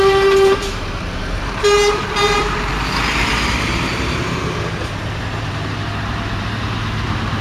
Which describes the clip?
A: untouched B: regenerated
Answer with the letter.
B